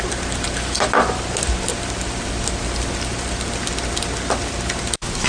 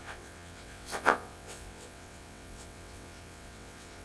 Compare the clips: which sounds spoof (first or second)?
second